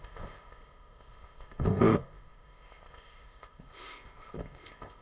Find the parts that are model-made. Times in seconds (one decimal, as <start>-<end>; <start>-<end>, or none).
0.0-5.0